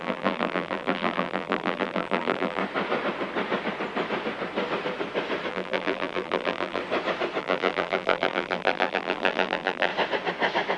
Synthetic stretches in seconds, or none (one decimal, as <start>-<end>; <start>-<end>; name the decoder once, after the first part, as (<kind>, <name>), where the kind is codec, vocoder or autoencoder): 0.0-2.6 (vocoder, BigVGAN v2); 5.5-6.8; 7.4-9.9